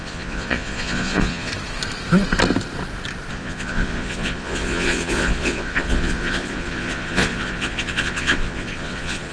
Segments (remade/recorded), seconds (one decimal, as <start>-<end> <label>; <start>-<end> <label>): 0.0-1.5 remade; 1.5-3.3 recorded; 3.3-9.3 remade